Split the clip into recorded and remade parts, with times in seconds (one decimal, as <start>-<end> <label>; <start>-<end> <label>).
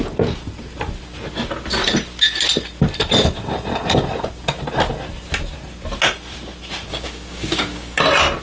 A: 0.0-6.9 recorded; 6.9-8.0 remade; 8.0-8.4 recorded